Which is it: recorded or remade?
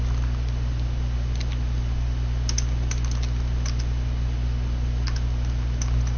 recorded